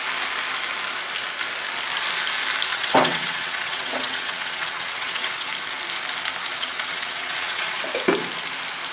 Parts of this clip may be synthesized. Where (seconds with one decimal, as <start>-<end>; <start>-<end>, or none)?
2.7-5.5; 6.5-7.8